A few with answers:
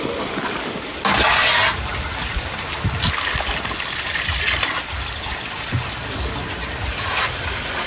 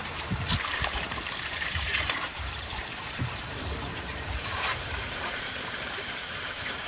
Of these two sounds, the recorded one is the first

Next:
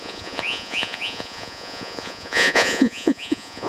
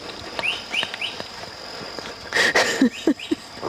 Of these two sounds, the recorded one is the second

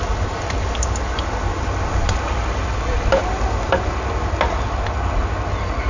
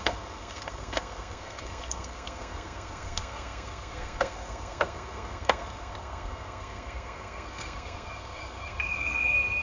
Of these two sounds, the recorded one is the first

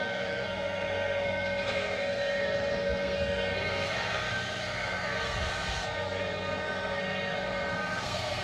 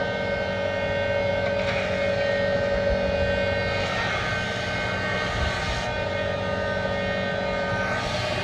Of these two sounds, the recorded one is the second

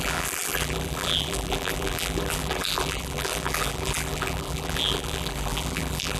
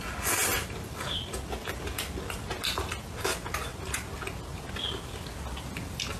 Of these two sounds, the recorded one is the second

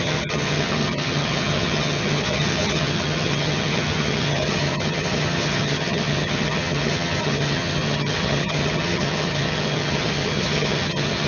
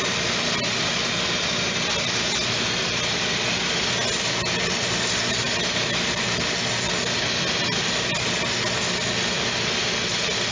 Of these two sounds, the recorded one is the second